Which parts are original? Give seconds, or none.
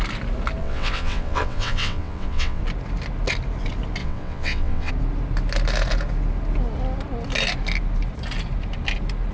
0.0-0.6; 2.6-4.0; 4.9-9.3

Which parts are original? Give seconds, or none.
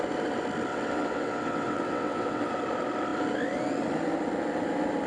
0.0-0.7; 2.5-5.1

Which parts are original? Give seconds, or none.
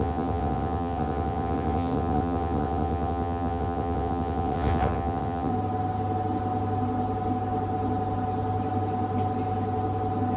5.5-10.4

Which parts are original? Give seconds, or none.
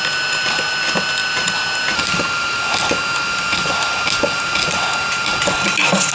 0.0-6.1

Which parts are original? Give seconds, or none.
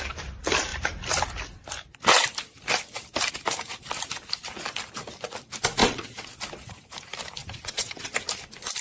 0.0-5.8; 6.3-7.4; 8.1-8.8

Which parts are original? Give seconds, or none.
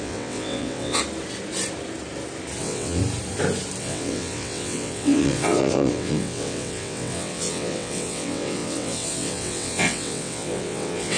1.0-2.6; 3.0-3.8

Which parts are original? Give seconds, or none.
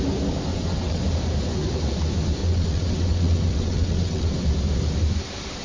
0.0-0.5; 1.0-2.4; 4.3-5.6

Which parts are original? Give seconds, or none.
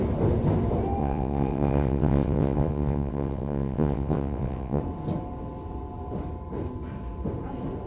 0.0-1.0; 4.8-7.9